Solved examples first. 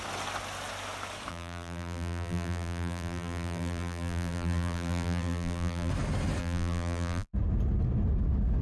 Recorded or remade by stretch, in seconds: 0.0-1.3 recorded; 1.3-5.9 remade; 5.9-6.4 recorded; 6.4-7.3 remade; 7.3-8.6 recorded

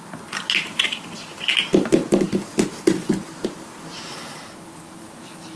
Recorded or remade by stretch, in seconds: 0.0-3.9 recorded; 3.9-5.0 remade; 5.0-5.6 recorded